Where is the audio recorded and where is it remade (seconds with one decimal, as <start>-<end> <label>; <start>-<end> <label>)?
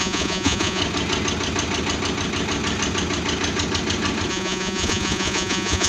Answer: 0.0-0.8 remade; 0.8-4.3 recorded; 4.3-5.9 remade